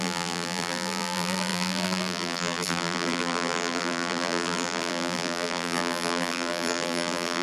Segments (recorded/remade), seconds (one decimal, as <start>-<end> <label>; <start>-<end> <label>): 0.0-7.4 remade